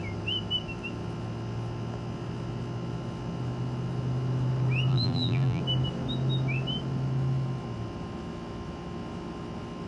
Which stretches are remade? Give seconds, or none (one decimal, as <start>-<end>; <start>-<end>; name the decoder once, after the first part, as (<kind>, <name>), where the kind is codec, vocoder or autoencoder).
4.9-5.6 (vocoder, BigVGAN v2)